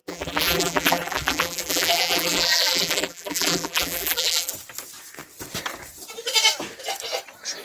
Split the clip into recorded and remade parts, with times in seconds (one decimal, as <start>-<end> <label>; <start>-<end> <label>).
0.0-4.5 remade; 4.5-7.6 recorded